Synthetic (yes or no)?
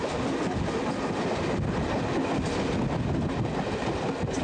no